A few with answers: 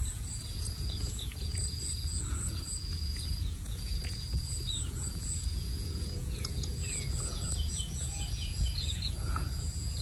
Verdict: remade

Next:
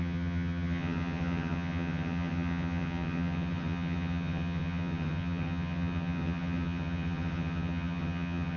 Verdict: remade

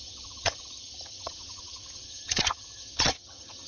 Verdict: remade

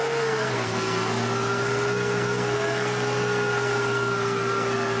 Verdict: remade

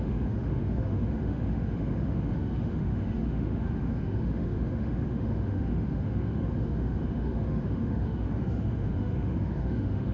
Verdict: remade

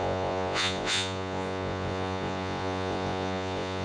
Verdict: remade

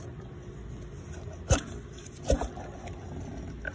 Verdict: recorded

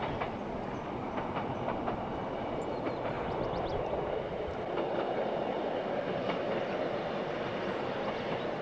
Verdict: recorded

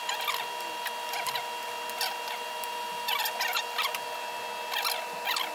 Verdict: recorded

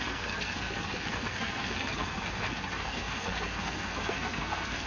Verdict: remade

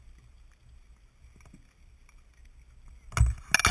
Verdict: recorded